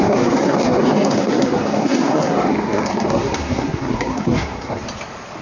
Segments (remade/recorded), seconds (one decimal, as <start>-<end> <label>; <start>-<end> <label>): 0.0-4.8 remade; 4.8-5.4 recorded